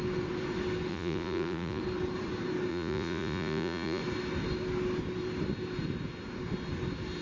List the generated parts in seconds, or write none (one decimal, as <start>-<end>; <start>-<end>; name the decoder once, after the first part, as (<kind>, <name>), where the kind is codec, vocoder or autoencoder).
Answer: 0.9-1.8 (vocoder, Vocos); 2.7-4.0